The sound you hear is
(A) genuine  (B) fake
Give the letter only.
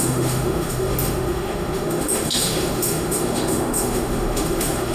B